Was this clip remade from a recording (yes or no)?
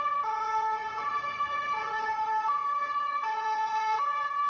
yes